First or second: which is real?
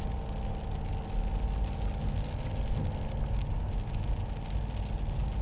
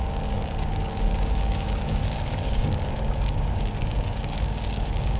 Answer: first